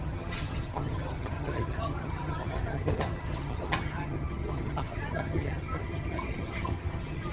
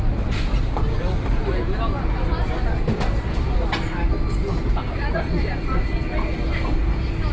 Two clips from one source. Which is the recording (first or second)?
second